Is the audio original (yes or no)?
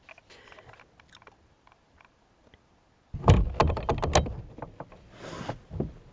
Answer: yes